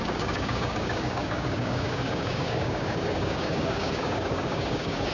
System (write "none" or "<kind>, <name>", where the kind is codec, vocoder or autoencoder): codec, DAC